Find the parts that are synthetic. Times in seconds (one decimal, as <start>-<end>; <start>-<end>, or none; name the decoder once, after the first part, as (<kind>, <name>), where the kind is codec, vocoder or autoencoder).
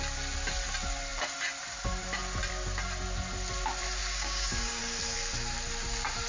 4.0-4.8 (codec, DAC)